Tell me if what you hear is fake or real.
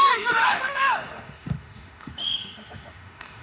fake